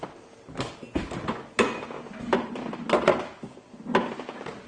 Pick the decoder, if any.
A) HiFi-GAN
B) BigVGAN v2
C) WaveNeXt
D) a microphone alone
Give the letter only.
D